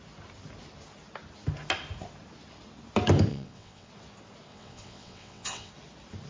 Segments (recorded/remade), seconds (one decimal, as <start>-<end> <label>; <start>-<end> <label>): 0.0-3.3 recorded; 3.3-3.9 remade; 3.9-4.5 recorded; 4.5-5.7 remade; 5.7-6.3 recorded